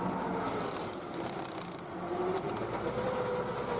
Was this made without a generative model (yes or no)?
yes